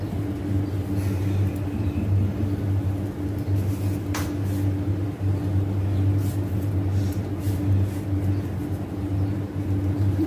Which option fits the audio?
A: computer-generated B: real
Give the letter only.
B